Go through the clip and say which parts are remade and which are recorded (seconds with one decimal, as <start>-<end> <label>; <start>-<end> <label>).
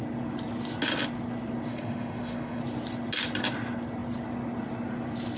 0.0-1.7 recorded; 1.7-2.6 remade; 2.6-5.4 recorded